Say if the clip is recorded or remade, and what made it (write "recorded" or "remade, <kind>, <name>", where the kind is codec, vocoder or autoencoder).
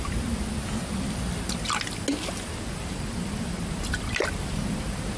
recorded